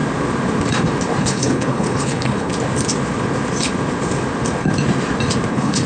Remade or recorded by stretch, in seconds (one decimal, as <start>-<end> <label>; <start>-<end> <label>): 0.0-1.2 recorded; 1.2-2.5 remade; 2.5-5.5 recorded; 5.5-5.9 remade